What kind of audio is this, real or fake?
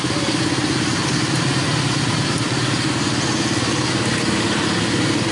real